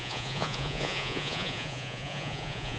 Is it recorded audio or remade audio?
remade